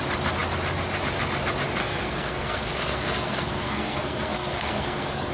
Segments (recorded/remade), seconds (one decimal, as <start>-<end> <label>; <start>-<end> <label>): 0.0-1.8 recorded; 1.8-5.3 remade